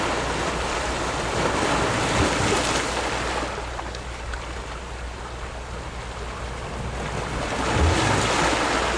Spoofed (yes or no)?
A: no